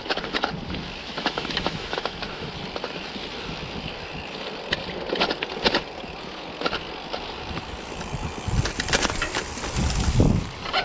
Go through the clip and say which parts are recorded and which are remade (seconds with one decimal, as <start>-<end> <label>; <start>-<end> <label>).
0.0-1.0 recorded; 1.0-2.5 remade; 2.5-10.8 recorded